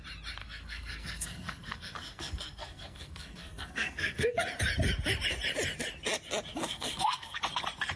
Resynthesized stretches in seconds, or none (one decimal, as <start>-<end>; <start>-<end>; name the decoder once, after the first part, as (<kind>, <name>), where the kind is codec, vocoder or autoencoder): 0.4-4.4 (codec, SNAC); 6.6-7.4